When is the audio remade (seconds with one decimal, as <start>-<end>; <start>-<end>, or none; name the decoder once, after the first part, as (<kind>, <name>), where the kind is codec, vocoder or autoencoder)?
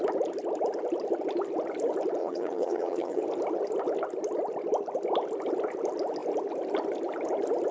2.2-3.2 (vocoder, HiFi-GAN)